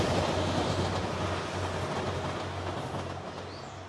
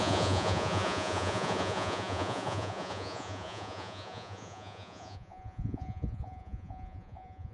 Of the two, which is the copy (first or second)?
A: second